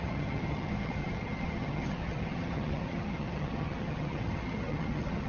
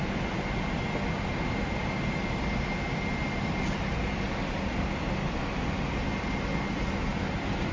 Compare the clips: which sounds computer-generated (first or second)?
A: first